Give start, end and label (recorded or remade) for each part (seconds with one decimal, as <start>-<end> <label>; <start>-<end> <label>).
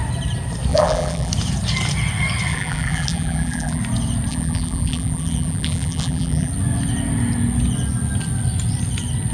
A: 0.0-0.7 recorded; 0.7-1.3 remade; 1.3-2.5 recorded; 2.5-3.8 remade; 3.8-4.3 recorded; 4.3-6.5 remade; 6.5-9.3 recorded